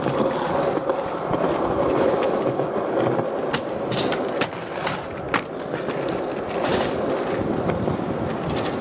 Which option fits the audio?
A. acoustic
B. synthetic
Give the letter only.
A